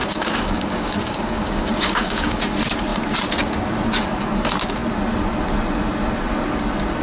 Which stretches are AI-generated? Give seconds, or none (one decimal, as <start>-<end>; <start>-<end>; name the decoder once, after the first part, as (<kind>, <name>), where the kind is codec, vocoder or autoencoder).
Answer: 0.0-2.4 (codec, DAC)